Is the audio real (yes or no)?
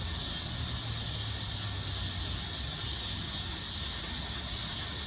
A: yes